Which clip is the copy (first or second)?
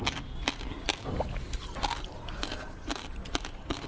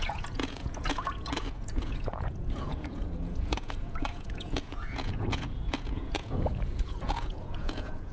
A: second